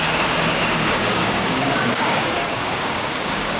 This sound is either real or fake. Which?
fake